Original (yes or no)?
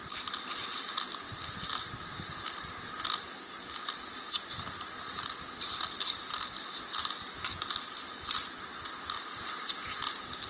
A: yes